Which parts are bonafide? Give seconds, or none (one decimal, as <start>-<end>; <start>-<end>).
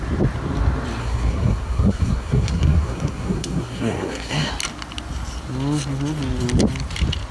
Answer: 0.0-1.0; 4.5-7.3